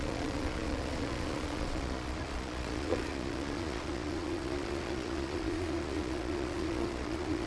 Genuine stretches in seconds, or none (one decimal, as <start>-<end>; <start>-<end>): none